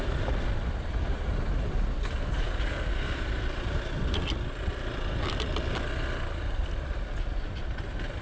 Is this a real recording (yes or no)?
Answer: yes